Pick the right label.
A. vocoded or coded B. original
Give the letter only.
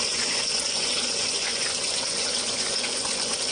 A